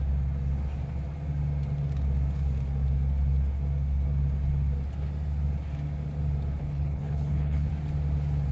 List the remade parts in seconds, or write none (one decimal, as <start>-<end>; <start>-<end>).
6.6-7.7